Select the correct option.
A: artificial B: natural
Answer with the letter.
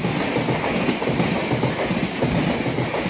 B